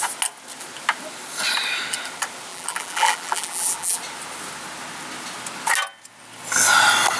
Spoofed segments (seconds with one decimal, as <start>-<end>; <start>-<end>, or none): 2.5-4.0